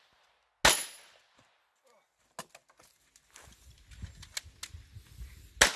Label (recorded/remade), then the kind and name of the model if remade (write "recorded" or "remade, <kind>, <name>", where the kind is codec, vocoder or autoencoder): recorded